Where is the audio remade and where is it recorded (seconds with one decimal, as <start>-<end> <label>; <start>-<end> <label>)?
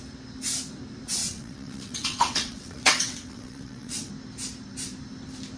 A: 0.0-1.2 recorded; 1.2-4.1 remade; 4.1-5.6 recorded